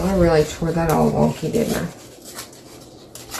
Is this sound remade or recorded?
recorded